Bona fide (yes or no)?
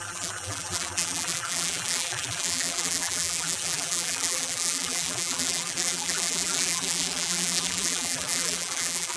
no